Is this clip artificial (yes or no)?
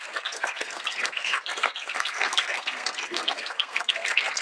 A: yes